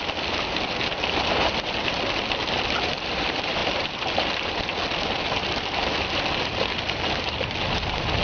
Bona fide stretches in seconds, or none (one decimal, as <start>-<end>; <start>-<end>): 0.0-8.2